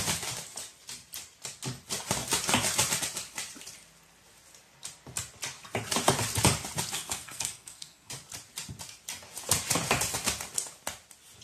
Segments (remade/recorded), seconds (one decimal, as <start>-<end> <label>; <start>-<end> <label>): 0.0-6.9 recorded; 6.9-8.1 remade; 8.1-11.4 recorded